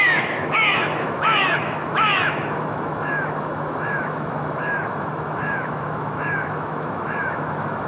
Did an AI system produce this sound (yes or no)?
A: yes